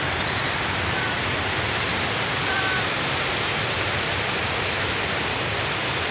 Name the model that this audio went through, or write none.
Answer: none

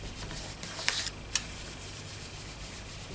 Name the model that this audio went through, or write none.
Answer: vocoder, BigVGAN v2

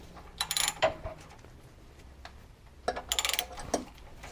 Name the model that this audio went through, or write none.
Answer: none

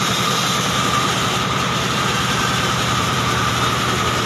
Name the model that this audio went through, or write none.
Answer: vocoder, BigVGAN v2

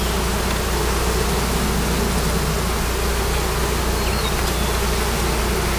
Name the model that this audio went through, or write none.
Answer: none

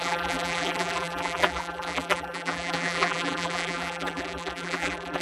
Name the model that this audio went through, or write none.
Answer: vocoder, BigVGAN v2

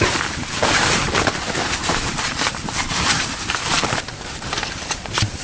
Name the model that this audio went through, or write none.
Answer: vocoder, BigVGAN v2